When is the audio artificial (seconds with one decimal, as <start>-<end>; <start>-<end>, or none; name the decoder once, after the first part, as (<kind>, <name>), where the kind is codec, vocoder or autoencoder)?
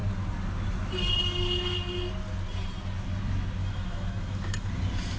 3.6-4.7 (autoencoder, DAC-VAE)